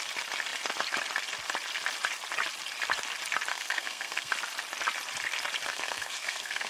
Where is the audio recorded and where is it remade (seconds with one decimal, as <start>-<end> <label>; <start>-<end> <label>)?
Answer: 0.0-3.5 recorded; 3.5-4.3 remade; 4.3-5.7 recorded; 5.7-6.7 remade